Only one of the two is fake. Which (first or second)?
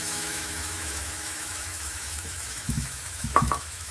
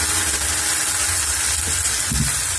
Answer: first